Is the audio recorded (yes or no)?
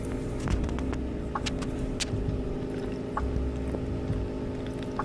yes